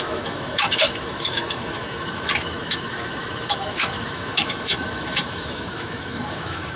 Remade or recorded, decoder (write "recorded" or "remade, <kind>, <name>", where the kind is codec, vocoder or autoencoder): remade, autoencoder, DAC-VAE